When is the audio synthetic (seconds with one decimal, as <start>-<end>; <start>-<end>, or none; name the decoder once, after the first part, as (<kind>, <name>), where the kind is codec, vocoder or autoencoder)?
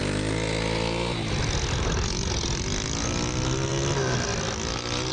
none